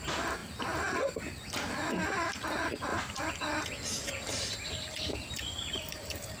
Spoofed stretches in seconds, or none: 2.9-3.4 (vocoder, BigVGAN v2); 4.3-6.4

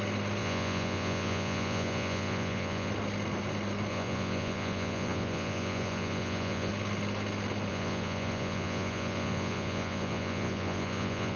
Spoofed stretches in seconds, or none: 0.4-2.9 (vocoder, Vocos); 3.9-6.7; 7.7-11.4

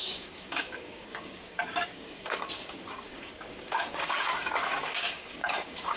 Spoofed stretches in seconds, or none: 0.0-6.0 (codec, DAC)

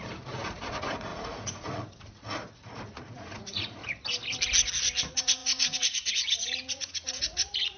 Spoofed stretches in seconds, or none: 0.0-3.8 (vocoder, Vocos); 5.0-7.8

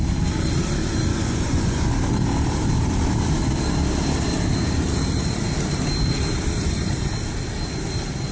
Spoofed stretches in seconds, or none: 1.1-1.9 (vocoder, Vocos)

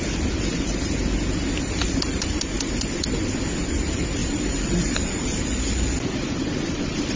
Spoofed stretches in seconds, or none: 4.2-5.1 (vocoder, BigVGAN v2)

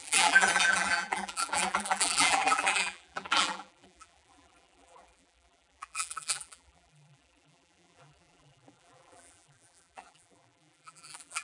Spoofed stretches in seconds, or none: 0.0-11.4 (vocoder, BigVGAN v2)

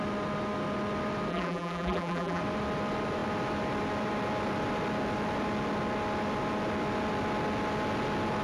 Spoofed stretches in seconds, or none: 1.3-2.4 (vocoder, BigVGAN v2)